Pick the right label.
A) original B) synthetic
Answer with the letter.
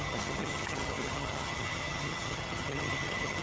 B